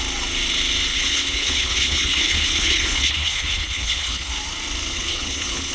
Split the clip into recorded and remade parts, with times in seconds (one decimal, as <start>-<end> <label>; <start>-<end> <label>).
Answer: 0.0-0.9 recorded; 0.9-4.3 remade; 4.3-4.9 recorded; 4.9-5.7 remade